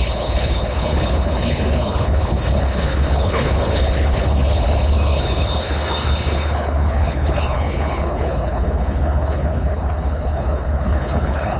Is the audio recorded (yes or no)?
no